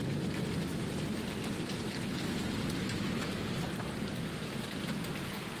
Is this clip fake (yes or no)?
no